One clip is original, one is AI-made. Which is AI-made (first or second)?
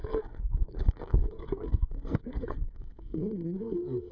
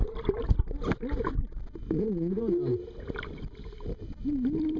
first